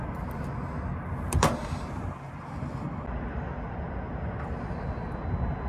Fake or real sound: real